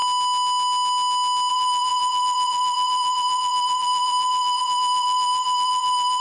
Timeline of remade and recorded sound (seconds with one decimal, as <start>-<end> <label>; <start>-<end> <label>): 0.0-1.5 recorded; 1.5-6.2 remade